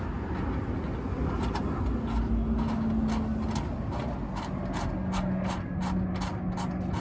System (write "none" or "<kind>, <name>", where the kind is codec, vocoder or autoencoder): none